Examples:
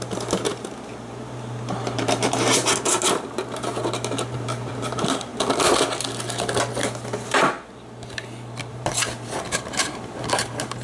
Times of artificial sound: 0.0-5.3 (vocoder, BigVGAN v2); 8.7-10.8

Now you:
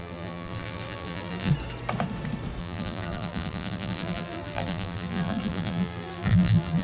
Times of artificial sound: 0.0-1.5 (vocoder, BigVGAN v2); 2.6-6.8

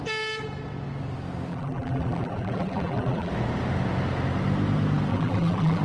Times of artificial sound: 1.5-3.3 (vocoder, BigVGAN v2); 5.1-5.8

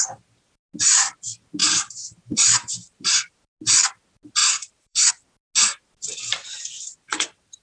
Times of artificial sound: 1.6-3.4 (vocoder, BigVGAN v2); 4.4-5.1; 6.1-6.7

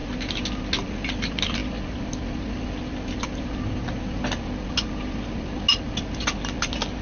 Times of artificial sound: none

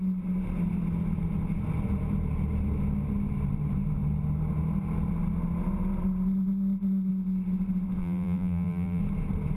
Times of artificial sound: 8.0-9.0 (vocoder, BigVGAN v2)